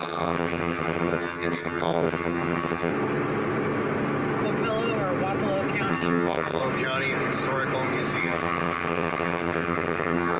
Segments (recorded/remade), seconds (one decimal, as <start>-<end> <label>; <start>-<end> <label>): 0.0-2.9 remade; 2.9-5.9 recorded; 5.9-6.6 remade; 6.6-8.2 recorded; 8.2-10.4 remade